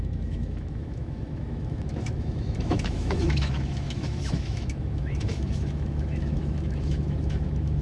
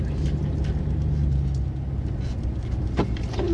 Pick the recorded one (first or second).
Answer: second